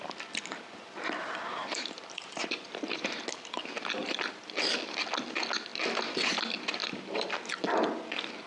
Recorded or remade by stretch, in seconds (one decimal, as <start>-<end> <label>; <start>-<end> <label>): 0.0-1.6 recorded; 1.6-3.2 remade; 3.2-6.8 recorded; 6.8-7.4 remade; 7.4-8.5 recorded